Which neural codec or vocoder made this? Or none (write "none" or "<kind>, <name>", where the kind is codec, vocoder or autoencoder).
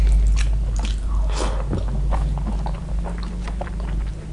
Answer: none